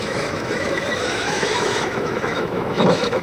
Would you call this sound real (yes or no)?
no